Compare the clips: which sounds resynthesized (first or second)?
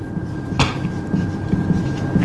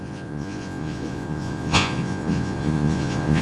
second